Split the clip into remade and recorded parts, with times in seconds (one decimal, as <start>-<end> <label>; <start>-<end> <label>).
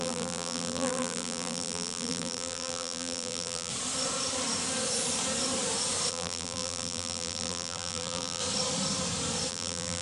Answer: 0.0-3.7 remade; 3.7-6.1 recorded; 6.1-8.4 remade; 8.4-9.5 recorded; 9.5-10.0 remade